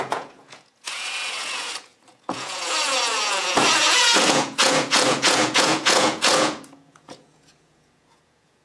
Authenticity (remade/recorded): remade